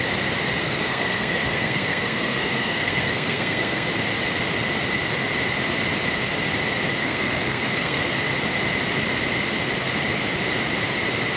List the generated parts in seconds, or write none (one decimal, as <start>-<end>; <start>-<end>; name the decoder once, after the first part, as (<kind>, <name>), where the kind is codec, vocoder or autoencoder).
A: 0.6-3.9 (codec, SNAC); 7.0-8.1